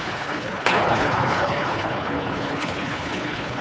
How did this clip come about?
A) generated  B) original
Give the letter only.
A